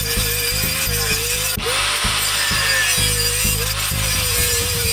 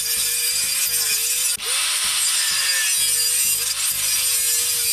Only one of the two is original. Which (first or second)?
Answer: second